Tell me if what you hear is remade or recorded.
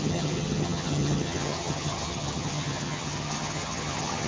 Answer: remade